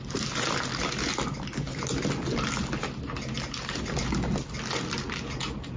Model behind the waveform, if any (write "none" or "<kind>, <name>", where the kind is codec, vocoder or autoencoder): none